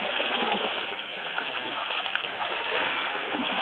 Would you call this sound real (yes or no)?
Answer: no